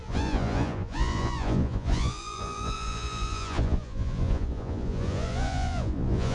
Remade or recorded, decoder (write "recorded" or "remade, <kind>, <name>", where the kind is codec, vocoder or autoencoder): remade, vocoder, Vocos